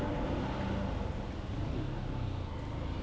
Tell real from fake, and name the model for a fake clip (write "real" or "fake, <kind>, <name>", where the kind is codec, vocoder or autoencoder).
real